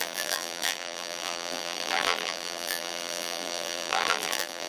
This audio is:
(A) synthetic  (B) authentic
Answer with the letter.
A